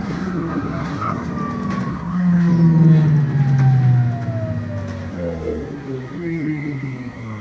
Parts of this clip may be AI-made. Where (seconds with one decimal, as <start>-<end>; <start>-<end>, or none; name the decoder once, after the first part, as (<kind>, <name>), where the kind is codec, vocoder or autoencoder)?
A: 0.0-1.3 (codec, SNAC); 1.9-2.5; 5.1-7.4